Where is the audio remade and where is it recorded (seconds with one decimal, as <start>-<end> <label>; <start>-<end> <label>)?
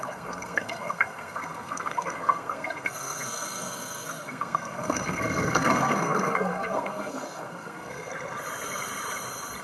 0.0-8.1 remade; 8.1-9.6 recorded